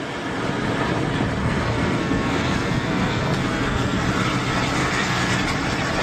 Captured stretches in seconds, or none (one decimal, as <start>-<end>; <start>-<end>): 0.0-1.4; 4.0-4.8; 5.3-6.0